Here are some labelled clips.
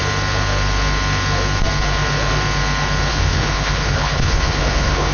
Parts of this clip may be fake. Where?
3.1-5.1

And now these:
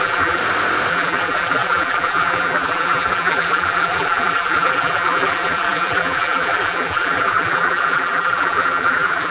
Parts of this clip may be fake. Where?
0.0-0.4; 0.9-9.3

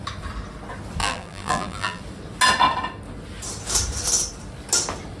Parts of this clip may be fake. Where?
1.0-2.0

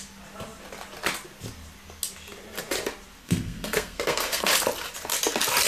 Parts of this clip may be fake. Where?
3.2-4.5

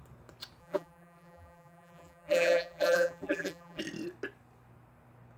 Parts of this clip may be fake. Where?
0.6-3.8

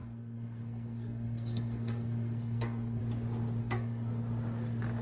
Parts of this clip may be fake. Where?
0.0-3.0; 3.6-4.2

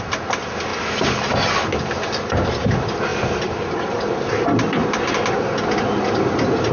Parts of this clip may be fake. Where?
none

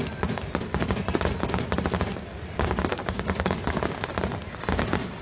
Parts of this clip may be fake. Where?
2.9-3.8